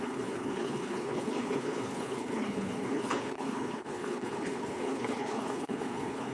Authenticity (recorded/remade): remade